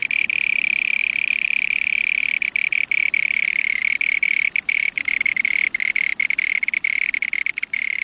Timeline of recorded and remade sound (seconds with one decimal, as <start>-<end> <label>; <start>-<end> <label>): 0.0-1.0 remade; 1.0-3.8 recorded; 3.8-5.2 remade; 5.2-8.0 recorded